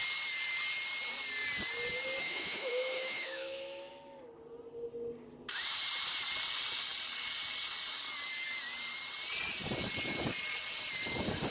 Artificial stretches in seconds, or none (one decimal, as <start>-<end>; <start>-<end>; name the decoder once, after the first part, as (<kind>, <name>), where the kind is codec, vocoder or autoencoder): 2.2-3.9 (autoencoder, DAC-VAE)